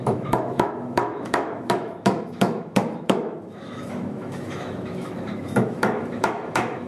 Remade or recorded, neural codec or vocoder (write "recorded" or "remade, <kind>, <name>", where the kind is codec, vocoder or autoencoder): remade, autoencoder, DAC-VAE